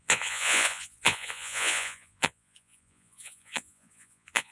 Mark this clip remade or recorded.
remade